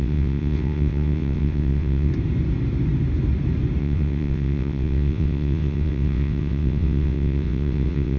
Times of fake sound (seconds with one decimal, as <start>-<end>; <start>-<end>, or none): 0.0-2.1; 3.8-8.2